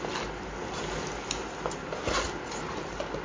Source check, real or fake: real